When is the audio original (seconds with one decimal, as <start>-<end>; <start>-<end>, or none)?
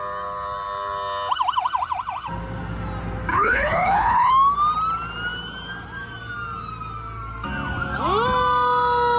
0.0-3.3; 4.3-9.2